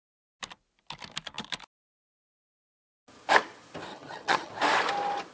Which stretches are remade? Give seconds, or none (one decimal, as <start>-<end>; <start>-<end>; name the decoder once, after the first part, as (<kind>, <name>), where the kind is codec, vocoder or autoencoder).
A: 3.9-4.5 (vocoder, HiFi-GAN)